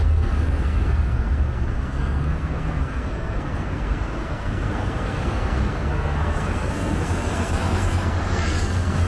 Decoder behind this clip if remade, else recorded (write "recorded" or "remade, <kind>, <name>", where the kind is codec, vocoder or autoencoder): remade, codec, SNAC